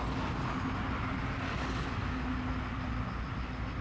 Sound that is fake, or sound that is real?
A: real